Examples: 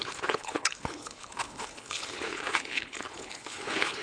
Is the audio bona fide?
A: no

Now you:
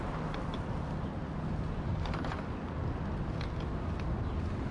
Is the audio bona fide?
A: yes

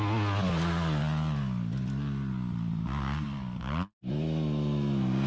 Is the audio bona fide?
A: yes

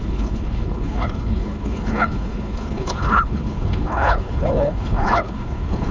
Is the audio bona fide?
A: no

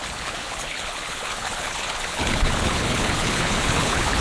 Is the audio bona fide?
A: no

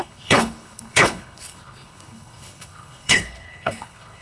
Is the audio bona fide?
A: no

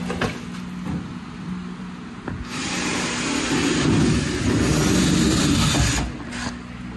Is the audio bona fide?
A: yes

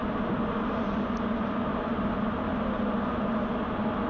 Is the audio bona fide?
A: yes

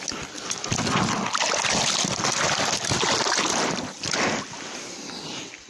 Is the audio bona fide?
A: yes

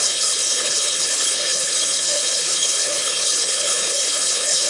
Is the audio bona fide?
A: no